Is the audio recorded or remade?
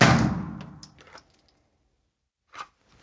recorded